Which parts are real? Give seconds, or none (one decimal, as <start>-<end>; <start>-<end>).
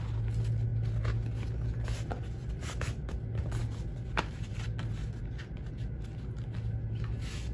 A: 0.0-7.5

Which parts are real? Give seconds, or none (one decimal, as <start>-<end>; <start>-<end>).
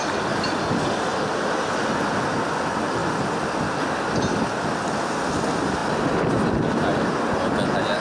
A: 0.0-8.0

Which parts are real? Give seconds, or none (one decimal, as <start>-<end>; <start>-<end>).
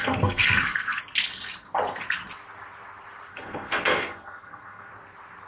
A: 1.0-3.3; 4.9-5.5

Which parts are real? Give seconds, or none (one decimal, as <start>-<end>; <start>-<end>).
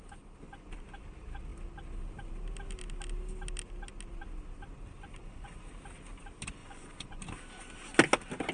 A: 0.0-5.2; 5.7-6.6; 7.2-8.5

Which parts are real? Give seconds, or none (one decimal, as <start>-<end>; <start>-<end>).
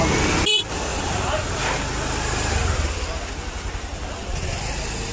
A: 0.0-0.9; 1.5-5.1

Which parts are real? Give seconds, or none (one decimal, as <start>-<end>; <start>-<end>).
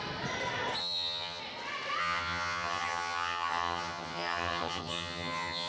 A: 0.0-0.8; 1.4-2.0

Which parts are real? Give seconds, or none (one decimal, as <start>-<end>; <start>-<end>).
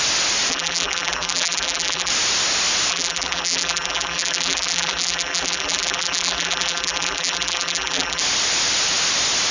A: 0.0-0.5; 2.1-2.9; 8.2-9.5